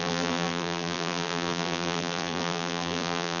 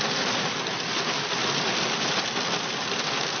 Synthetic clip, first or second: first